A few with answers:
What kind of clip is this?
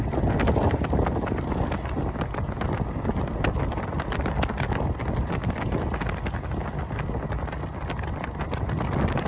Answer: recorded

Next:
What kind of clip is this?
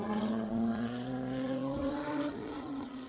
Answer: remade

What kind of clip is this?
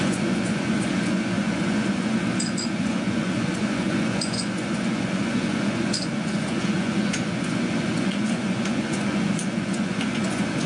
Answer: remade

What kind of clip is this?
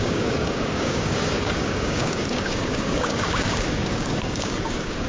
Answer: remade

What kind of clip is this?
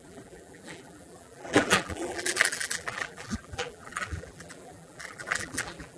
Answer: remade